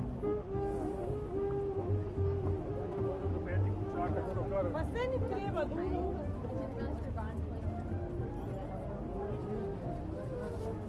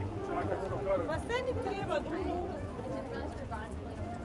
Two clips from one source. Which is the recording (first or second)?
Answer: first